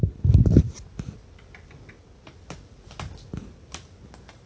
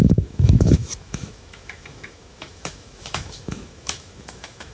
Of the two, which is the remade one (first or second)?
second